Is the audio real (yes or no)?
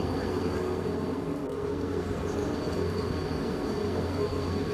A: no